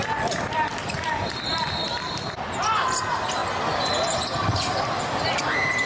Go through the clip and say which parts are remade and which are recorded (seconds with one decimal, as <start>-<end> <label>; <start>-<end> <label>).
0.0-5.9 remade